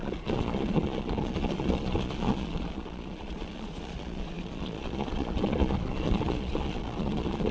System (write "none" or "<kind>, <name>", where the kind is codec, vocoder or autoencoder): vocoder, Vocos